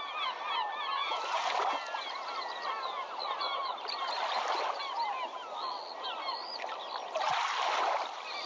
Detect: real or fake real